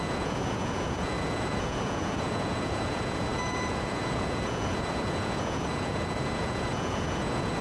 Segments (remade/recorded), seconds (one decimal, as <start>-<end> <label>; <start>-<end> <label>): 0.0-7.6 remade